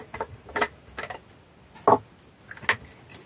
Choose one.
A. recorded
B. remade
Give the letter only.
A